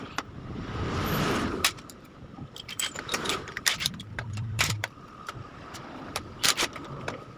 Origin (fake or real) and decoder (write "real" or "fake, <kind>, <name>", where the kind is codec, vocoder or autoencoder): fake, vocoder, BigVGAN v2